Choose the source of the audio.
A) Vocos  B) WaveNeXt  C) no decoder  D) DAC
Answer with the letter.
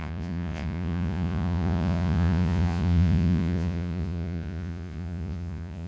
A